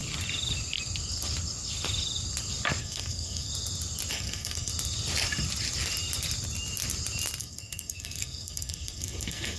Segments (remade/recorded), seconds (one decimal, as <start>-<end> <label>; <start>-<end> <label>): 0.0-2.8 recorded; 2.8-3.5 remade; 3.5-4.1 recorded; 4.1-4.7 remade; 4.7-7.4 recorded; 7.4-9.6 remade